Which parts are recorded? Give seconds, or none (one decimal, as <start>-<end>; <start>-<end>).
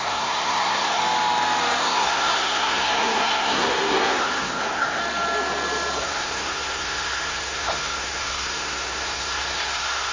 1.0-1.8; 5.0-6.0